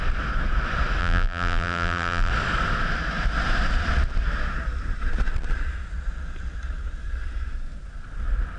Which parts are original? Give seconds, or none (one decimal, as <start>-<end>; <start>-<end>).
0.0-1.0; 2.3-8.6